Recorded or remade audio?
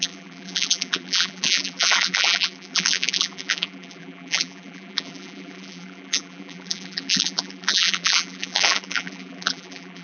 remade